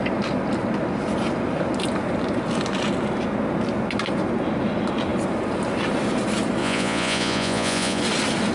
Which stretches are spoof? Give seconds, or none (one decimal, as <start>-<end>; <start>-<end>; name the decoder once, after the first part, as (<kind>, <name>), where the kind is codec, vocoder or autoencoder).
6.6-8.0 (vocoder, Vocos)

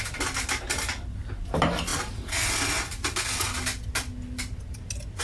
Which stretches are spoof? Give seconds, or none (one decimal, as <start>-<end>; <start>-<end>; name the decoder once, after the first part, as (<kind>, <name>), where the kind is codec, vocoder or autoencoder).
none

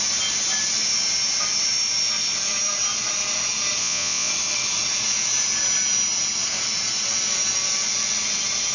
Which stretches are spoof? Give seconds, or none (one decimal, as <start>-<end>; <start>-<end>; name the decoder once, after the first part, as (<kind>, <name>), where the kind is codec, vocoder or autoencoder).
3.8-4.3 (vocoder, Vocos)

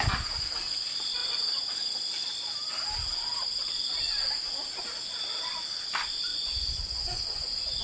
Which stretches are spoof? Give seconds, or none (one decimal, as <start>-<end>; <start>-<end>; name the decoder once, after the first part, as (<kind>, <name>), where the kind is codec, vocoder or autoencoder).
6.3-7.8 (vocoder, Vocos)

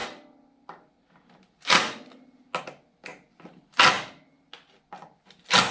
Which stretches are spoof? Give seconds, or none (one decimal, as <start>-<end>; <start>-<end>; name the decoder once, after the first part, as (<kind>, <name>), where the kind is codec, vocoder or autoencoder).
none

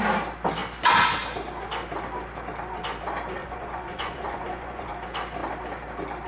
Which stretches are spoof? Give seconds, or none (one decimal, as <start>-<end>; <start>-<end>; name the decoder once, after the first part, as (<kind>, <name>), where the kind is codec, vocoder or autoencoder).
3.4-4.9 (vocoder, Vocos)

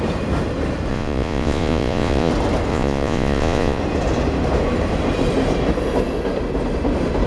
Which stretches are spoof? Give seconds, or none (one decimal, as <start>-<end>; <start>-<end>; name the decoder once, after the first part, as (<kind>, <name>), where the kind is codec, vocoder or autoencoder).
0.9-2.3 (vocoder, Vocos); 2.7-3.8